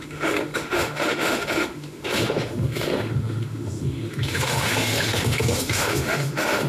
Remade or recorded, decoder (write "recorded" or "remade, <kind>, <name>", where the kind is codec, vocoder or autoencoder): remade, autoencoder, DAC-VAE